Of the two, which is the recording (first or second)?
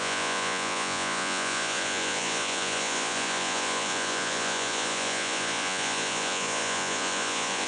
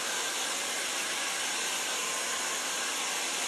second